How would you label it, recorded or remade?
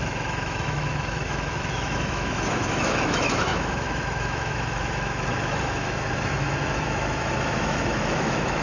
remade